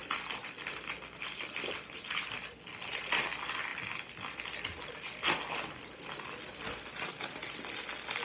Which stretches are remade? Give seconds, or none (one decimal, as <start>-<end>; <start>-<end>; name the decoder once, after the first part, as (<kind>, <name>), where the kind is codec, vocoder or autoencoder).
none